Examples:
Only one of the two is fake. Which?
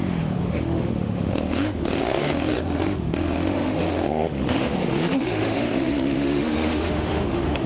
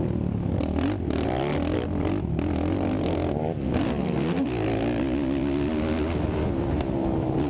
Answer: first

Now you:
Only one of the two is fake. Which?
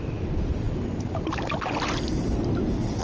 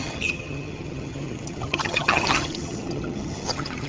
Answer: second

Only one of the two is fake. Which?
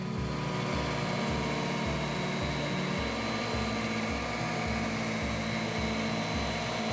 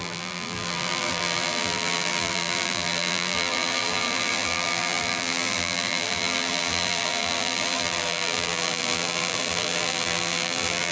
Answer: second